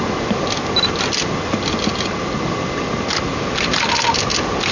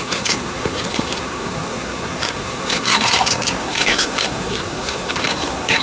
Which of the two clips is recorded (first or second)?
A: first